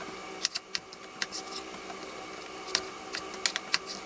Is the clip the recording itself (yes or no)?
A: yes